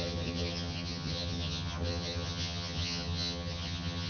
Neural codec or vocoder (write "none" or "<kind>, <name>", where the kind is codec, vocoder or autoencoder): vocoder, HiFi-GAN